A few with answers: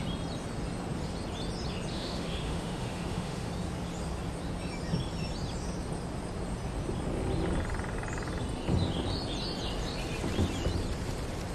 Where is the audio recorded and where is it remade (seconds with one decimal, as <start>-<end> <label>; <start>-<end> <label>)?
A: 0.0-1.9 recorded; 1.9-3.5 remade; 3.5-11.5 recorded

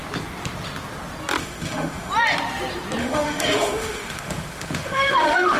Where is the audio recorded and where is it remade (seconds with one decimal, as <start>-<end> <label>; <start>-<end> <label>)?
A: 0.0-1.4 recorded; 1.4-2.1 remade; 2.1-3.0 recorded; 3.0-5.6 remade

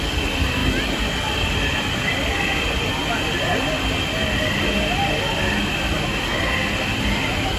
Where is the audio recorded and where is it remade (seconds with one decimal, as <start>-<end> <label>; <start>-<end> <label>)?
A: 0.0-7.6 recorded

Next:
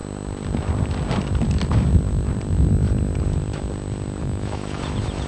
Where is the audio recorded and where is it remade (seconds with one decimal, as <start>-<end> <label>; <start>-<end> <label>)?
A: 0.0-4.2 recorded; 4.2-4.8 remade; 4.8-5.3 recorded